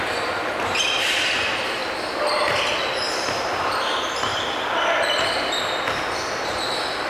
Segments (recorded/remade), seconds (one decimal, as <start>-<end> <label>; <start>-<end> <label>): 0.0-1.8 remade; 1.8-2.8 recorded; 2.8-7.1 remade